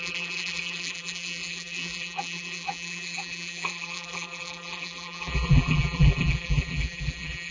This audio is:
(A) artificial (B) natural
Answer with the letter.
A